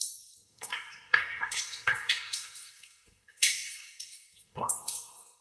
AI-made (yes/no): yes